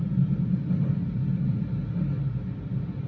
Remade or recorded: recorded